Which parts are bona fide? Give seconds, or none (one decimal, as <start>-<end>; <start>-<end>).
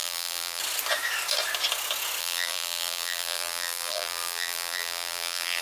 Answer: 0.6-2.2